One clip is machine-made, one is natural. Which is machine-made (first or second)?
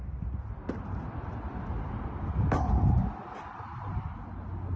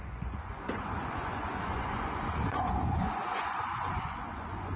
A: second